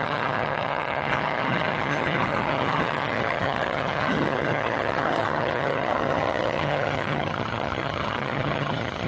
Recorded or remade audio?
remade